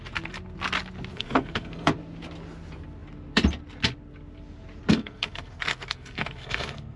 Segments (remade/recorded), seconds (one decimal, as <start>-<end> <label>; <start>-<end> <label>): 0.0-1.1 recorded; 1.1-1.9 remade; 1.9-4.9 recorded; 4.9-7.0 remade